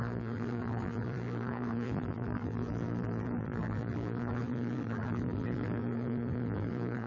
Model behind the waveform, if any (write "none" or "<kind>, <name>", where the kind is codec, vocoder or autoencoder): vocoder, BigVGAN v2